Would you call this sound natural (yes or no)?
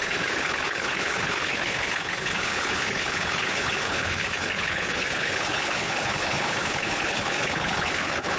no